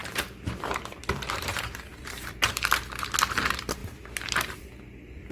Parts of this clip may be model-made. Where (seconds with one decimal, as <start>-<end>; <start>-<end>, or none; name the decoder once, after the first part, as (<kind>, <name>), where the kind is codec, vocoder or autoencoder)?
0.0-2.7 (vocoder, BigVGAN v2); 3.8-4.6